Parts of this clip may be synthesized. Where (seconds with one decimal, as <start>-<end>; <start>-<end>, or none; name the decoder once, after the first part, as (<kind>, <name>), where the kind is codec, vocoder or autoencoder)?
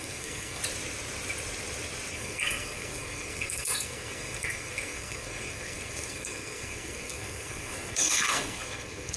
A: 0.0-0.6 (codec, SNAC); 2.1-9.2